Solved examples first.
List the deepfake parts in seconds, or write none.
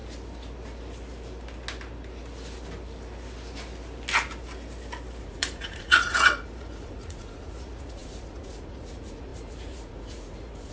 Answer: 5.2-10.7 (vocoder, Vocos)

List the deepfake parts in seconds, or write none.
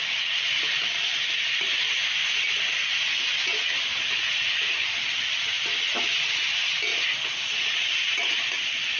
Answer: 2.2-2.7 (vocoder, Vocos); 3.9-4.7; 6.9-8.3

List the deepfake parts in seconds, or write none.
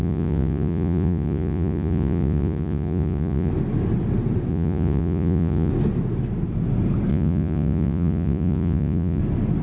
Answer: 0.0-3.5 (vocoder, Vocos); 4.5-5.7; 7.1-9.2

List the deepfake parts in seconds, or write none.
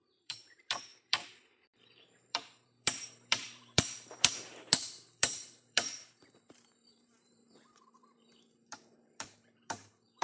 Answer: 0.0-10.2 (vocoder, BigVGAN v2)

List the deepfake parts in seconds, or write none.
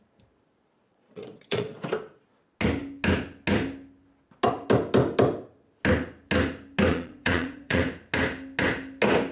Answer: 0.9-1.8 (vocoder, Vocos); 6.9-7.8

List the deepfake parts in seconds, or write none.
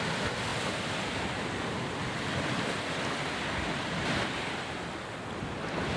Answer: none